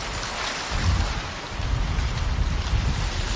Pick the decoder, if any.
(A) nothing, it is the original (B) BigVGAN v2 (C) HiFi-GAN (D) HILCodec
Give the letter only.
A